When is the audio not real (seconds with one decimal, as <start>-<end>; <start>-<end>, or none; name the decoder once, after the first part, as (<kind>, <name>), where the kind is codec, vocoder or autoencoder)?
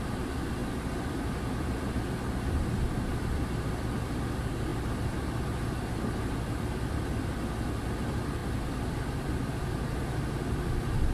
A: 8.4-9.5 (vocoder, BigVGAN v2)